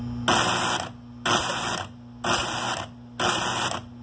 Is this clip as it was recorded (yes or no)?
yes